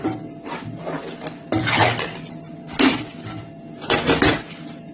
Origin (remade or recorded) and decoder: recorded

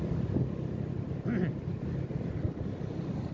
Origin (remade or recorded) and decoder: recorded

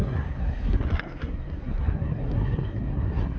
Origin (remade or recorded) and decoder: remade, codec, SNAC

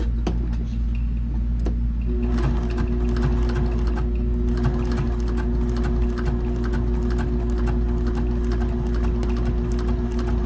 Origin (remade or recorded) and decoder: recorded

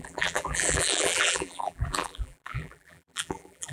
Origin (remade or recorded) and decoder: remade, vocoder, BigVGAN v2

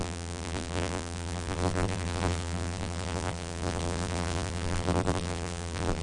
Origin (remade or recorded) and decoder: remade, vocoder, BigVGAN v2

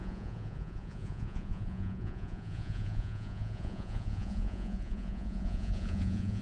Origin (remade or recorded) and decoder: remade, vocoder, Vocos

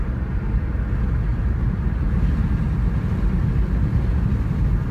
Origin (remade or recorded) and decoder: recorded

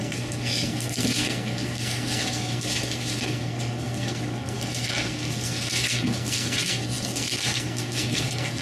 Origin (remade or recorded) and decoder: remade, codec, SNAC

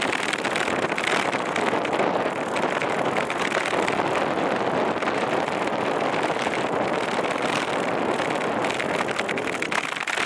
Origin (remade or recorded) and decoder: recorded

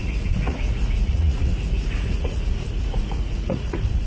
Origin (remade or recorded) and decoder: remade, vocoder, Vocos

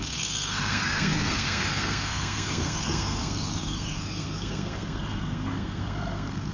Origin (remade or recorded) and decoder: remade, codec, SNAC